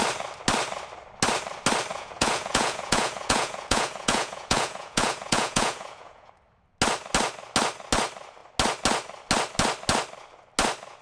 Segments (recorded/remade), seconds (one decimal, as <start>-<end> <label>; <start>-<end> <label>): 0.0-1.9 recorded; 1.9-6.3 remade; 6.3-11.0 recorded